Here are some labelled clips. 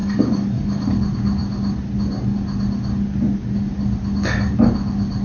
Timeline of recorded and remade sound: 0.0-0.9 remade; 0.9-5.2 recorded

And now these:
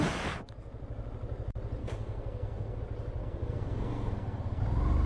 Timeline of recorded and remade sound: 0.0-1.8 recorded; 1.8-2.8 remade; 2.8-3.2 recorded; 3.2-4.6 remade; 4.6-5.1 recorded